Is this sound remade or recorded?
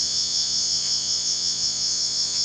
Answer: remade